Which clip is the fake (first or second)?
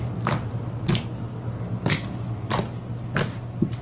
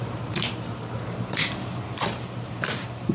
second